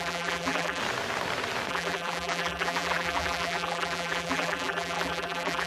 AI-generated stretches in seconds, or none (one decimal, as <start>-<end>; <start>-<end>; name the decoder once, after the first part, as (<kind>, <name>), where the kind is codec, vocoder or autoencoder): 0.0-0.8 (vocoder, BigVGAN v2); 1.7-5.7